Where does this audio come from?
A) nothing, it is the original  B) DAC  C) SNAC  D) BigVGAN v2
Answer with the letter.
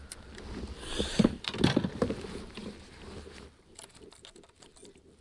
A